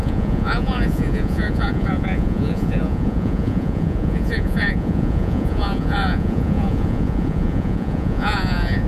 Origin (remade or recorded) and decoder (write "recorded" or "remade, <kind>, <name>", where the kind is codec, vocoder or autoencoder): remade, vocoder, Vocos